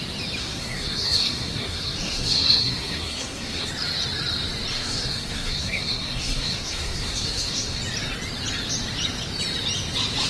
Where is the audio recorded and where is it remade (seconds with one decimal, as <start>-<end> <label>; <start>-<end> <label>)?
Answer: 0.0-0.4 recorded; 0.4-3.7 remade; 3.7-4.7 recorded; 4.7-7.8 remade; 7.8-10.3 recorded